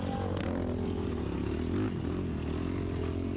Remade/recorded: recorded